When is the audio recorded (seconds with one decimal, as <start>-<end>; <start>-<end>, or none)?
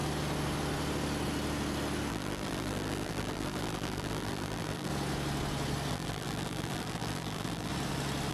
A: 0.0-2.1; 4.9-5.9; 7.7-8.3